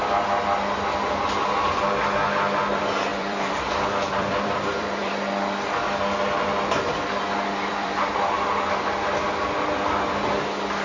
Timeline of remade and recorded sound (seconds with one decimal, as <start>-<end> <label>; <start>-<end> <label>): 0.0-3.1 recorded; 3.1-5.2 remade; 5.2-7.7 recorded; 7.7-8.5 remade; 8.5-10.8 recorded